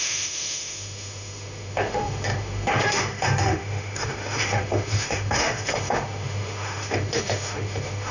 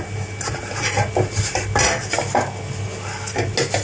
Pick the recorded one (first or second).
second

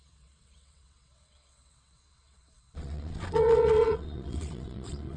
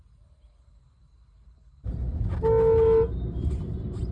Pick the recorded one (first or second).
second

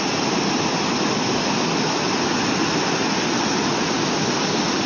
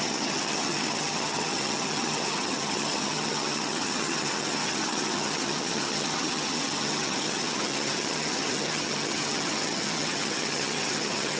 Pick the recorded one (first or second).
first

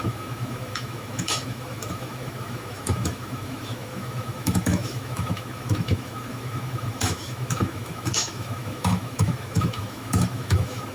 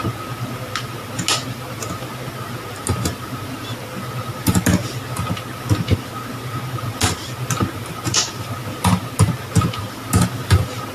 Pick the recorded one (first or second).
second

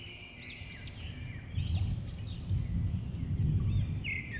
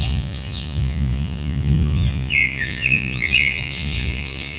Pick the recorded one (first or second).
first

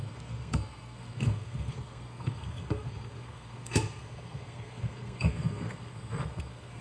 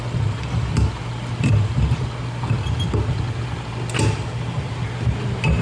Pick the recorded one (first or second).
second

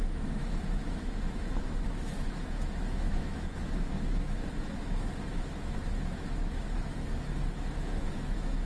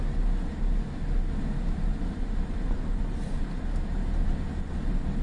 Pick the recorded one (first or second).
second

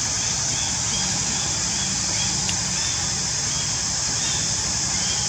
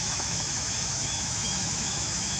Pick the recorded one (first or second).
first